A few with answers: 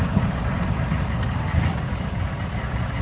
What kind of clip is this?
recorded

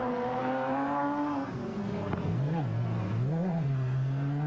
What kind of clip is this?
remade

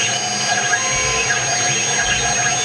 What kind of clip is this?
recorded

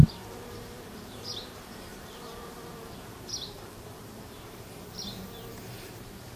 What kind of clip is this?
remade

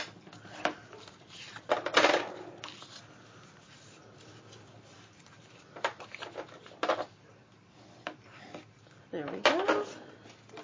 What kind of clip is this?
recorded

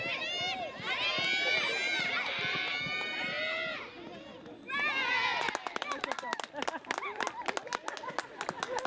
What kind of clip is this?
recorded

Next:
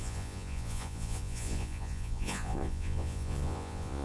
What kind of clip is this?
remade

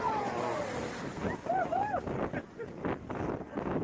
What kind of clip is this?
recorded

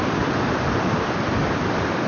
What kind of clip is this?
recorded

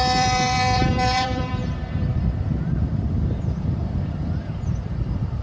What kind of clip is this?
remade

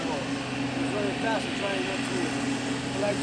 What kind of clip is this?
recorded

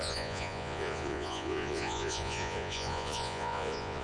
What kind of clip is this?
remade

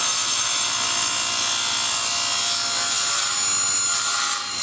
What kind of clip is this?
recorded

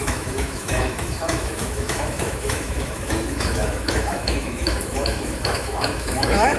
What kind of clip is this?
remade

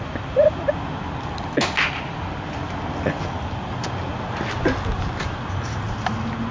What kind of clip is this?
recorded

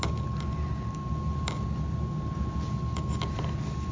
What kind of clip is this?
recorded